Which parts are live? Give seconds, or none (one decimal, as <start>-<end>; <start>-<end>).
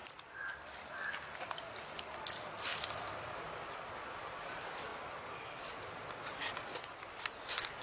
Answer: 1.2-2.7; 4.1-4.9; 6.2-7.8